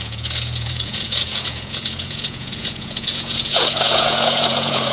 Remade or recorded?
remade